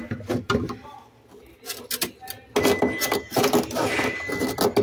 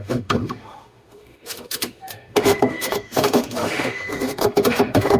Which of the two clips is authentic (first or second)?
first